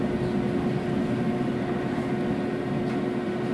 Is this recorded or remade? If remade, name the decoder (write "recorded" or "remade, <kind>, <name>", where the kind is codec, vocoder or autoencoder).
recorded